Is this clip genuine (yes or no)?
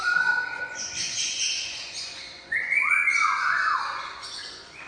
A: no